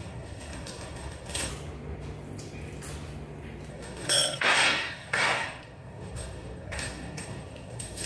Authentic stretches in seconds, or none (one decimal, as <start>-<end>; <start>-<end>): 1.5-3.7